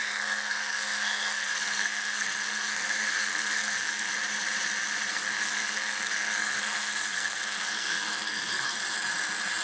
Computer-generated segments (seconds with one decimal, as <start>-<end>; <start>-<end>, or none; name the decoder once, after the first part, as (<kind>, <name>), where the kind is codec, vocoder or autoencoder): 0.0-4.1 (codec, SNAC); 5.1-8.8